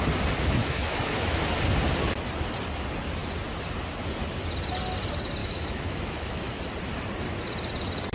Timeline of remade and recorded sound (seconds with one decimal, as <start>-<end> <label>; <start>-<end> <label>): 0.0-0.6 recorded; 0.6-1.4 remade; 1.4-5.4 recorded; 5.4-6.6 remade; 6.6-8.1 recorded